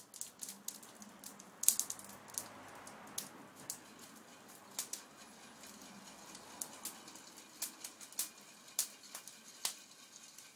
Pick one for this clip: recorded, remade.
recorded